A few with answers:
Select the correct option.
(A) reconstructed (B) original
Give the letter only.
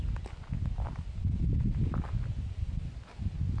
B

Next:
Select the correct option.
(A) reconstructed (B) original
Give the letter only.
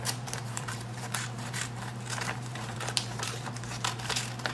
A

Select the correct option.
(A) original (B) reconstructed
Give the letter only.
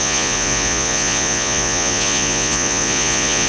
B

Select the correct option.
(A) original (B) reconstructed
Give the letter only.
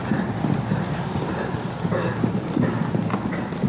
A